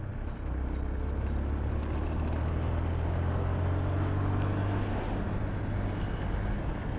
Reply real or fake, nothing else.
real